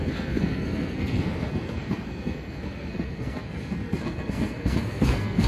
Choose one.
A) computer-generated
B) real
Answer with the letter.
A